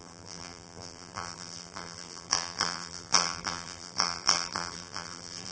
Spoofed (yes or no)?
yes